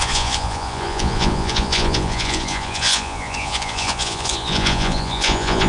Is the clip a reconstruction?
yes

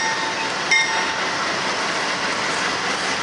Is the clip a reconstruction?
no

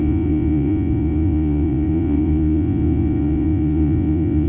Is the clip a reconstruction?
yes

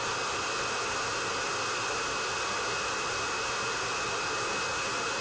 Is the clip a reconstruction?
no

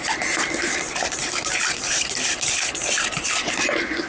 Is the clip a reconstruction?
no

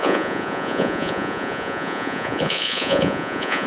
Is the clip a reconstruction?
yes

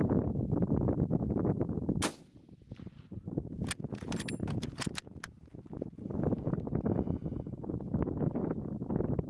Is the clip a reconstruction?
no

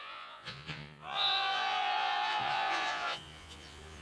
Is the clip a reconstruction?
yes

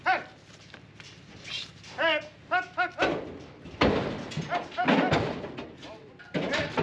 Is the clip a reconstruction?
no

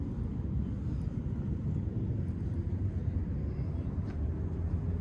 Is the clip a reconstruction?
no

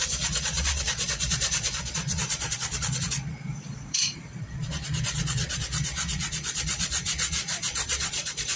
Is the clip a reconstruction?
yes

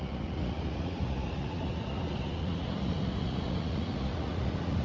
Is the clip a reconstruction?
yes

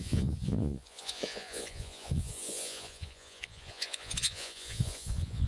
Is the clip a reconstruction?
yes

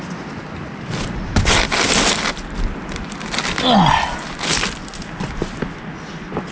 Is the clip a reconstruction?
no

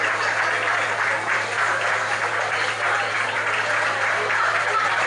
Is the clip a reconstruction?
no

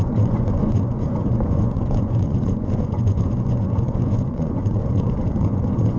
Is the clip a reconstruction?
yes